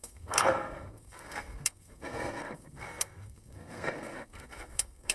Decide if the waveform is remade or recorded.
remade